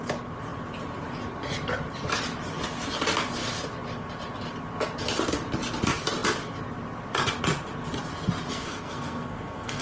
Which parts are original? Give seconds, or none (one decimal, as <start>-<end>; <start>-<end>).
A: 0.0-8.5